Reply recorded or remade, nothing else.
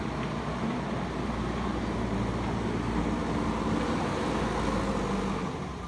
recorded